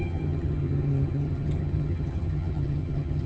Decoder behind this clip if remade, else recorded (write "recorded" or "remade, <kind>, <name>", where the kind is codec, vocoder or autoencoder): remade, vocoder, HiFi-GAN